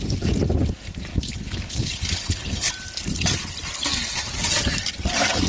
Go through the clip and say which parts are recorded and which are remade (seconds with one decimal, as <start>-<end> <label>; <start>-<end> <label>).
0.0-1.1 recorded; 1.1-2.7 remade; 2.7-5.5 recorded

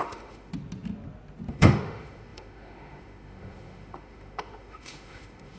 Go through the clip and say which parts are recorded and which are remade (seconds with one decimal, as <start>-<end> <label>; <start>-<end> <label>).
0.0-0.5 remade; 0.5-1.5 recorded; 1.5-5.6 remade

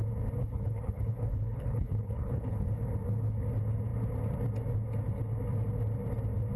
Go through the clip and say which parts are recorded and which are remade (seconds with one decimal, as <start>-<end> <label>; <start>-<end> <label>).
0.0-0.4 recorded; 0.4-2.8 remade; 2.8-6.6 recorded

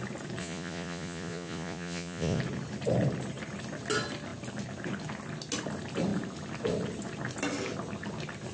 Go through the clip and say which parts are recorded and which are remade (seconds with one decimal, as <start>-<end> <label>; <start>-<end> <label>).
0.0-0.4 recorded; 0.4-2.4 remade; 2.4-8.5 recorded

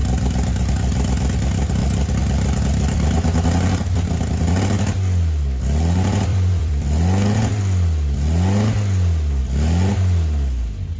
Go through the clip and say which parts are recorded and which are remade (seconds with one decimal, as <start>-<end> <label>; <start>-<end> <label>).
0.0-0.7 remade; 0.7-1.8 recorded; 1.8-4.6 remade; 4.6-6.3 recorded; 6.3-7.6 remade; 7.6-11.0 recorded

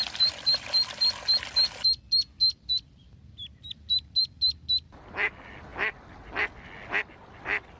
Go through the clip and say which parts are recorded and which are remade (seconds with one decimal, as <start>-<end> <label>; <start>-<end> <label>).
0.0-7.8 recorded